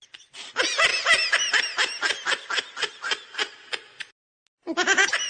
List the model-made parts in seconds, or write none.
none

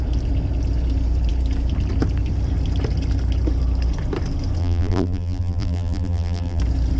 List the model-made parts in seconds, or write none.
4.6-6.6 (vocoder, BigVGAN v2)